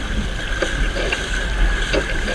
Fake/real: real